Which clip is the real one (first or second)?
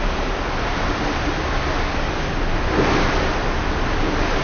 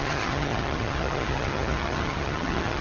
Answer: first